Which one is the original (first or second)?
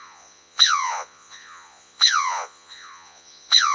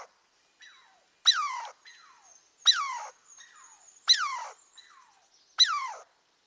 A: second